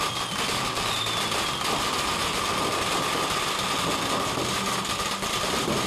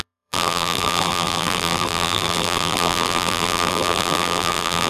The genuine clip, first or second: first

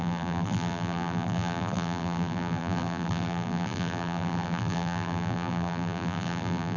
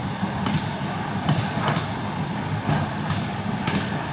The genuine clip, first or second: second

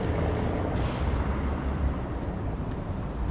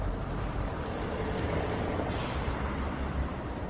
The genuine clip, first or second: first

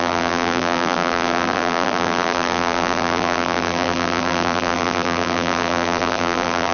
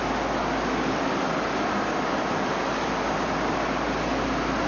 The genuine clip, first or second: second